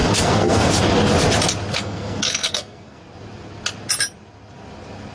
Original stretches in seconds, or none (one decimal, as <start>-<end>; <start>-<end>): 0.7-1.7; 3.0-5.1